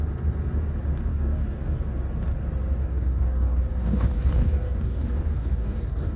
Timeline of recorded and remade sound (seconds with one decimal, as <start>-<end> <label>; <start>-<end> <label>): 0.0-1.1 recorded; 1.1-1.8 remade; 1.8-2.8 recorded; 2.8-6.2 remade